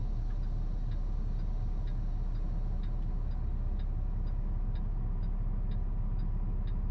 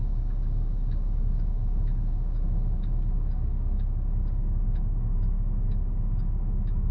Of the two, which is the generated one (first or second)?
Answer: second